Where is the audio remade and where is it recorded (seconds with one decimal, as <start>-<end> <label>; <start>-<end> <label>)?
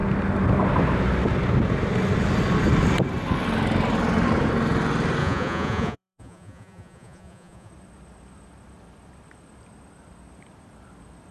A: 0.0-5.2 recorded; 5.2-7.7 remade; 7.7-11.3 recorded